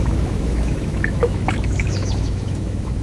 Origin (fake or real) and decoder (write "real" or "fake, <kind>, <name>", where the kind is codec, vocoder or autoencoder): fake, autoencoder, DAC-VAE